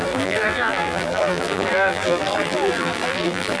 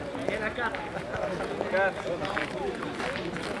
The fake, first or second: first